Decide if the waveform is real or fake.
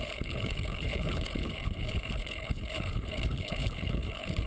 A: fake